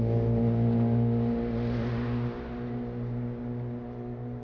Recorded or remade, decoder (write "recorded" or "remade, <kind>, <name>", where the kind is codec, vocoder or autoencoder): recorded